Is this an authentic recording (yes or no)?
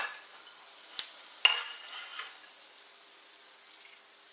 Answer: yes